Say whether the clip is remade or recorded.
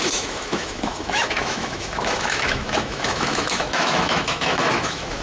remade